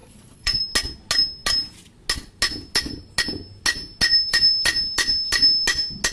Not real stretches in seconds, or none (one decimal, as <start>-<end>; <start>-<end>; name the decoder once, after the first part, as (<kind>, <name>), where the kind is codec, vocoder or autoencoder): 0.0-0.6 (vocoder, Vocos)